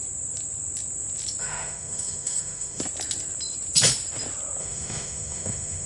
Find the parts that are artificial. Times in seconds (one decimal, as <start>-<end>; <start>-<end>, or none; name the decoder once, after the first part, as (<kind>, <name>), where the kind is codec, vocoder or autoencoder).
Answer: 1.4-2.8 (autoencoder, DAC-VAE); 4.6-5.9